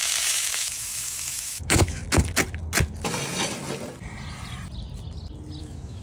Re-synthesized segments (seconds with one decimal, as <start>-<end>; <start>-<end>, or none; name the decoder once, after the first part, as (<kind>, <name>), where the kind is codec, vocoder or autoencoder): 0.0-2.0 (autoencoder, DAC-VAE); 5.6-6.0